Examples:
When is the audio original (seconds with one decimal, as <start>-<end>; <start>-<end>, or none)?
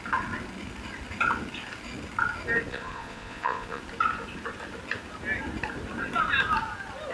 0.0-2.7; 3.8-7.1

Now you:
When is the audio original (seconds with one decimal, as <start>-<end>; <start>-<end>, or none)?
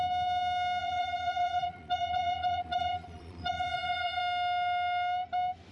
0.0-0.8; 4.2-5.7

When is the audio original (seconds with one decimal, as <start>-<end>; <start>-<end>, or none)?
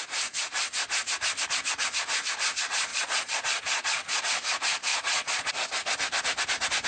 0.0-2.9; 4.2-4.9; 5.5-6.9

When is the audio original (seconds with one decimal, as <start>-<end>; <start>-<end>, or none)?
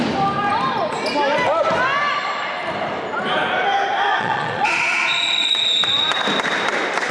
0.0-4.1; 5.6-7.1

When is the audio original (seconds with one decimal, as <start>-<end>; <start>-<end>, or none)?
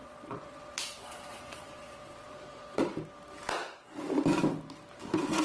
2.8-5.4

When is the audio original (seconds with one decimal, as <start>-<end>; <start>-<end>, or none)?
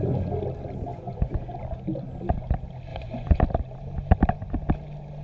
0.0-0.9; 1.6-2.9; 3.4-5.2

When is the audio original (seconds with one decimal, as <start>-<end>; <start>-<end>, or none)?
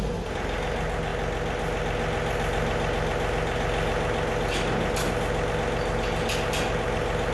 0.0-7.3